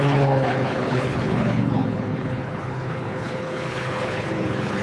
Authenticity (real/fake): fake